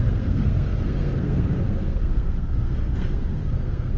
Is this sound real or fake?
fake